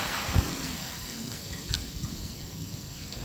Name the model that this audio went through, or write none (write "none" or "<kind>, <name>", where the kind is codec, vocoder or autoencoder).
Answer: codec, SNAC